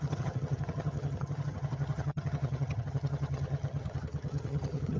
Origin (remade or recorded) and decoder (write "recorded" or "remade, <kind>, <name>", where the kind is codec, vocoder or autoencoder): remade, vocoder, HiFi-GAN